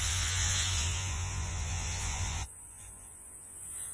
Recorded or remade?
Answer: remade